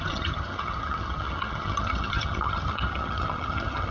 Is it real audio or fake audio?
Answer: fake